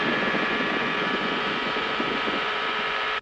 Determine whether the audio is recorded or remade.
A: remade